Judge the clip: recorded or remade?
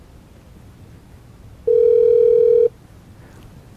recorded